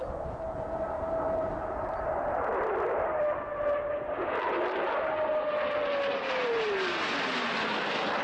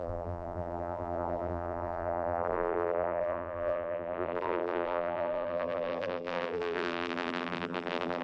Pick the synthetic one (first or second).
second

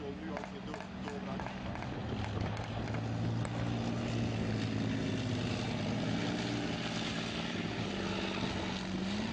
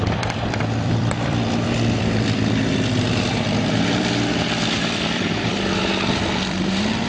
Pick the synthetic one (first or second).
second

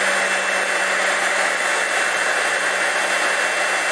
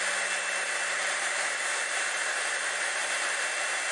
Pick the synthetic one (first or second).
second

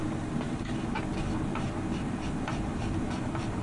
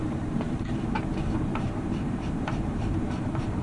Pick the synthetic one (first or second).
second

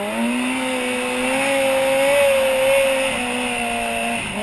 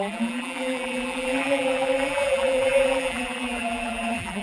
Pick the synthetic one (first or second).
second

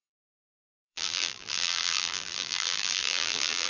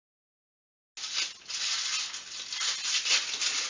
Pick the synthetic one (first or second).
first